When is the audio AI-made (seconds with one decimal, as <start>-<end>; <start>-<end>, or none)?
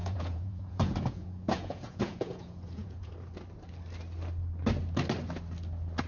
0.0-3.1